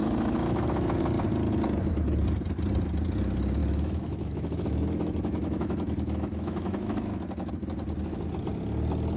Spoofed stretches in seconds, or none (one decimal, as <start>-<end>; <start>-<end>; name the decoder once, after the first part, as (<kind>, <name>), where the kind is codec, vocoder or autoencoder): 0.0-1.0 (autoencoder, DAC-VAE); 3.6-7.5